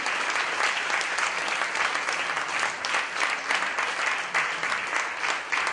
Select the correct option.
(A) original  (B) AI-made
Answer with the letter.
A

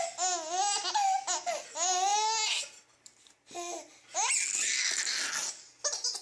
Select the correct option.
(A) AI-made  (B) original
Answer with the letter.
B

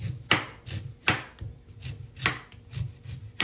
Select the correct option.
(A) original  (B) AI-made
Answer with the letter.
A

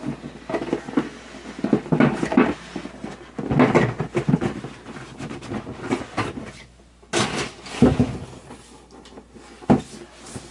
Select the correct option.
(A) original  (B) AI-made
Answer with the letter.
A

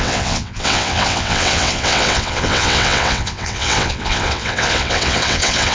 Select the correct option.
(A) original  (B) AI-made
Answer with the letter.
B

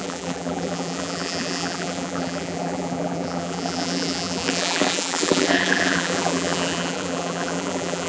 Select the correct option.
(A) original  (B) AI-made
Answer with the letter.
B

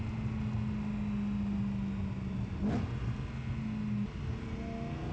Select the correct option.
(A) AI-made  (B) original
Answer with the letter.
B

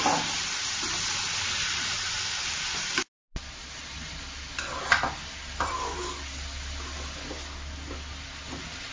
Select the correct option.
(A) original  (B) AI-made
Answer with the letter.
A